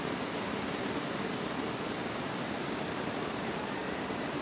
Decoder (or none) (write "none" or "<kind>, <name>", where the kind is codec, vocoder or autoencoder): vocoder, BigVGAN v2